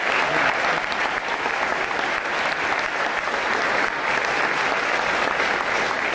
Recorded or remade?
recorded